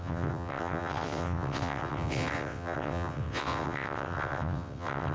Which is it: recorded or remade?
remade